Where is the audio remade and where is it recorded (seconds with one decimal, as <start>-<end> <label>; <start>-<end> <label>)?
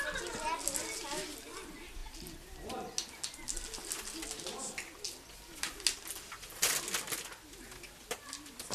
0.0-8.7 recorded